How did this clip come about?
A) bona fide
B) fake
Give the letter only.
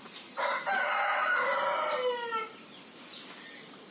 A